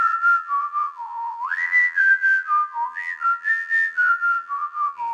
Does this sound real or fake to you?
fake